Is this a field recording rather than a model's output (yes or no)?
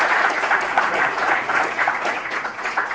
no